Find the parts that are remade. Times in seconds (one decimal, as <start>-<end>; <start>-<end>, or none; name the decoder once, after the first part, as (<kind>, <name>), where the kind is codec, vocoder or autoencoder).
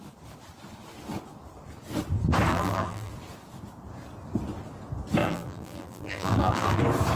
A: 2.5-3.1 (vocoder, BigVGAN v2); 5.2-6.8